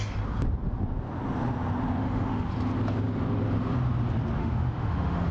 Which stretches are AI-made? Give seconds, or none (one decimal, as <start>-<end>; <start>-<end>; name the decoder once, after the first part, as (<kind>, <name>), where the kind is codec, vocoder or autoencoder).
2.0-2.5 (autoencoder, DAC-VAE); 4.4-5.3